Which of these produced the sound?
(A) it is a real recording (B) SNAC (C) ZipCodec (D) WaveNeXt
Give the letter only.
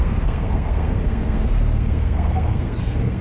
B